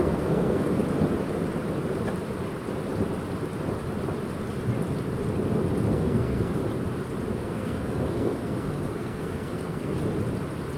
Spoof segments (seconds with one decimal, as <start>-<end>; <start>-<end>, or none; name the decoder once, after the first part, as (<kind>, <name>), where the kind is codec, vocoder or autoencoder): 0.0-0.8 (codec, SNAC); 5.9-6.6; 7.3-10.0